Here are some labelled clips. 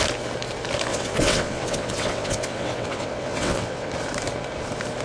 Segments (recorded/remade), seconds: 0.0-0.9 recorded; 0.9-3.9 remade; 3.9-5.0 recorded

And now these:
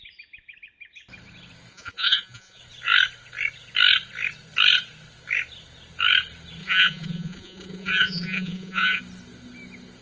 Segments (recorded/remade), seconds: 0.0-1.7 recorded; 1.7-2.6 remade; 2.6-6.6 recorded; 6.6-9.0 remade; 9.0-10.0 recorded

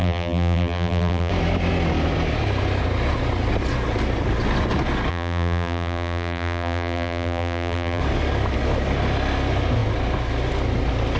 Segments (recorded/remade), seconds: 0.0-1.3 remade; 1.3-5.1 recorded; 5.1-8.0 remade; 8.0-11.2 recorded

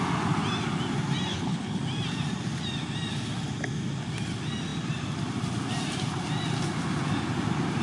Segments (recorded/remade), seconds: 0.0-1.3 recorded; 1.3-1.8 remade; 1.8-7.8 recorded

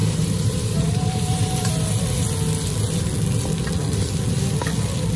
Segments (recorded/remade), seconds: 0.0-1.7 remade; 1.7-5.2 recorded